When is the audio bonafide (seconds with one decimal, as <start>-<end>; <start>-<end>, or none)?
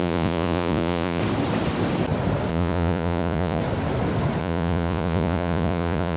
1.2-2.5; 3.6-4.4